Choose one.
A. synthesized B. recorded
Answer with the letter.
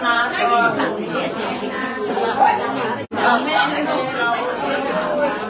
B